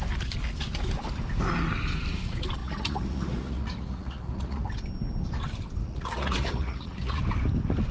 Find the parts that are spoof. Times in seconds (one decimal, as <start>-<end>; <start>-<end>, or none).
2.6-4.7; 5.8-7.2